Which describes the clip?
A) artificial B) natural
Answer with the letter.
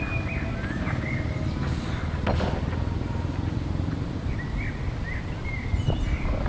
B